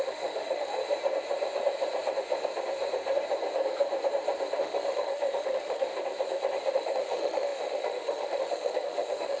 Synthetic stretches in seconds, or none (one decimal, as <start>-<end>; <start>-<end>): 0.0-0.8; 4.6-5.9; 6.7-9.4